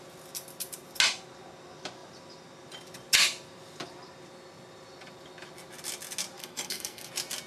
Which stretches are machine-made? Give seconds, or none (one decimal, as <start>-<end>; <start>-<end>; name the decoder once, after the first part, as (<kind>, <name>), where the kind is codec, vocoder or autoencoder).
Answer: 6.4-7.1 (codec, SNAC)